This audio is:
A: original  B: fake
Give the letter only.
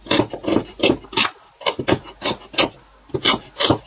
A